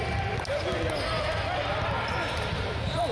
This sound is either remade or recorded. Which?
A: recorded